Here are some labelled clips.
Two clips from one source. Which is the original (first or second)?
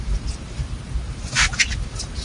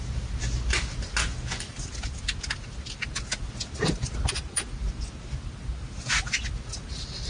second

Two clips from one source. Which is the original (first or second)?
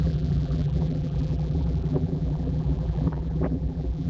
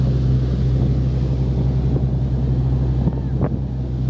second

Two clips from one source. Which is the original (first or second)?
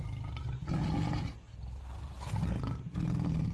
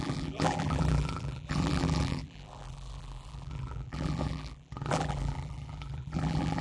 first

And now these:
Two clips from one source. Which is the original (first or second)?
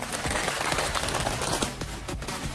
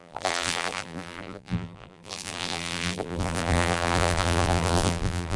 first